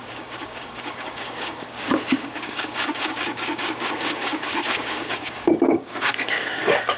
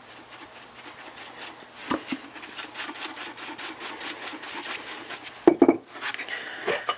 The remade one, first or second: first